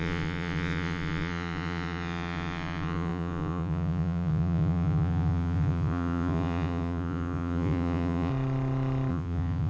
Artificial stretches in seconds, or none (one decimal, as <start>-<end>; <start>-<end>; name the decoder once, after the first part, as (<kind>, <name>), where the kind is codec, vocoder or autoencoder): 0.0-8.3 (vocoder, Vocos); 9.1-9.7